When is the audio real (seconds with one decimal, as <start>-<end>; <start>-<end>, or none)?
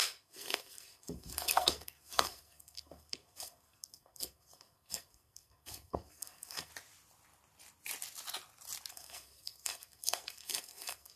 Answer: 6.7-8.9